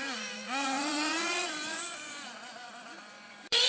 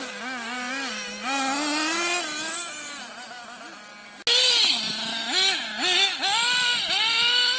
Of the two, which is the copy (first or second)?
first